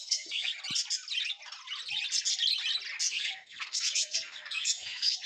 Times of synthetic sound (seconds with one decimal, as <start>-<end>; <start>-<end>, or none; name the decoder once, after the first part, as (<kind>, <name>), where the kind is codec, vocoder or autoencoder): 0.0-0.5 (codec, SNAC); 3.1-5.3